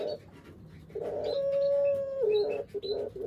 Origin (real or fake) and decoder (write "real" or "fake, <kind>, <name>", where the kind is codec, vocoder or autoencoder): real